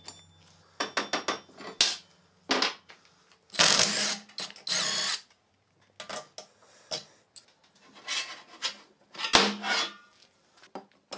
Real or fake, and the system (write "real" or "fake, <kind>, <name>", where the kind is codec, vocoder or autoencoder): real